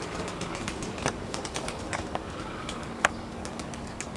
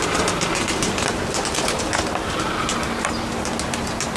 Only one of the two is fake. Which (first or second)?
first